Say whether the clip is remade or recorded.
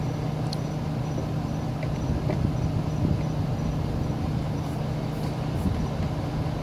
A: recorded